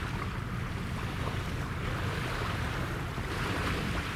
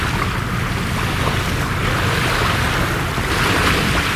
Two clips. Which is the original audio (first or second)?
second